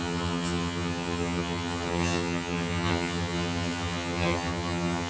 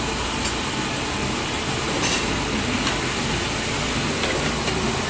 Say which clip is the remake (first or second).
first